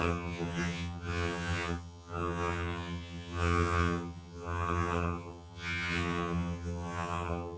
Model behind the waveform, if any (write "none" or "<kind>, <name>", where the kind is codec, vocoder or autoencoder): vocoder, HiFi-GAN